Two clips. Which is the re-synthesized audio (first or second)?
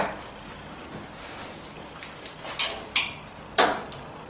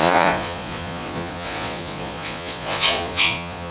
second